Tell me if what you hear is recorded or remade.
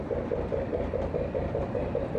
recorded